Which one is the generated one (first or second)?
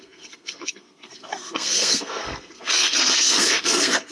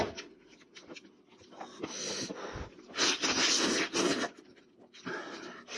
first